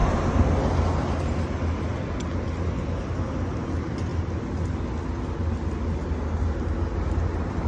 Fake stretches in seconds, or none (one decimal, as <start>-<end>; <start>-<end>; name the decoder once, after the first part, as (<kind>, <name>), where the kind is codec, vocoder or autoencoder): none